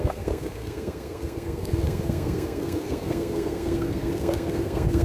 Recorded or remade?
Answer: remade